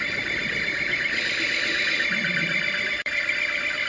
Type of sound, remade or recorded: remade